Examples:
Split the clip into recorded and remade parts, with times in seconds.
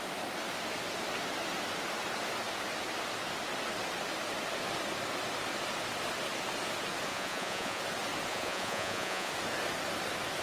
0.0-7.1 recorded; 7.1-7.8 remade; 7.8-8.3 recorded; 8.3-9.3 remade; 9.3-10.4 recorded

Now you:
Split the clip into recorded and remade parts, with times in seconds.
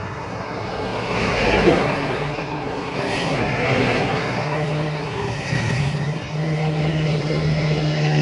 0.0-8.2 remade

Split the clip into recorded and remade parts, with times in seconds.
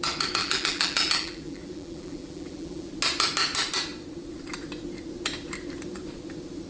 0.0-0.4 recorded; 0.4-2.9 remade; 2.9-6.7 recorded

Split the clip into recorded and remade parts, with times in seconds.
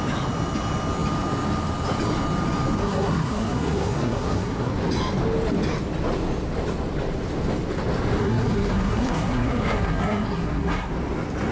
0.0-2.8 recorded; 2.8-4.7 remade; 4.7-8.2 recorded; 8.2-10.9 remade; 10.9-11.5 recorded